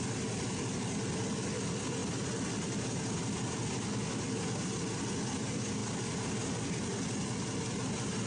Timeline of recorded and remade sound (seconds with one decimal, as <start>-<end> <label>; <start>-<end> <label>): 0.0-8.3 recorded